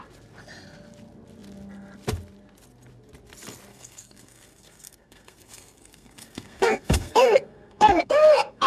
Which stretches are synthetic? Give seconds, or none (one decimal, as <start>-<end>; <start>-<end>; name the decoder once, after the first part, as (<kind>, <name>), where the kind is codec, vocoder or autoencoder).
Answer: 3.7-8.7 (codec, SNAC)